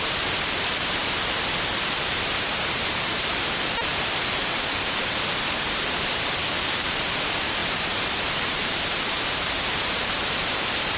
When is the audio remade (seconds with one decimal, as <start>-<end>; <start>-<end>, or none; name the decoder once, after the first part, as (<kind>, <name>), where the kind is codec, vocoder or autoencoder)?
0.0-1.0 (vocoder, BigVGAN v2); 1.7-3.9; 4.6-11.0